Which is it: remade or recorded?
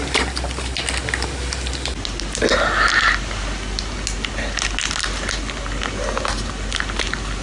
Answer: recorded